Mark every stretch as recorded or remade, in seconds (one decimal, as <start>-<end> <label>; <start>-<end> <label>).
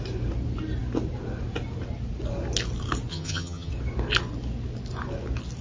0.0-3.1 recorded; 3.1-3.7 remade; 3.7-5.6 recorded